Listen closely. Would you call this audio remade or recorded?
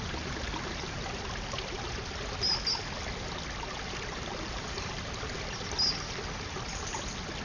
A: recorded